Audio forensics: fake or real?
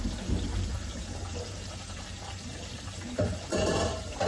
fake